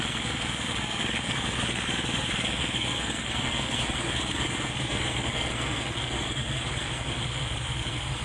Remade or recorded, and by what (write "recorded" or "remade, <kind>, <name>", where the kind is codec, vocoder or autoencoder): remade, codec, SNAC